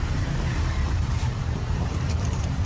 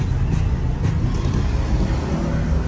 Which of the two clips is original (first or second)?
second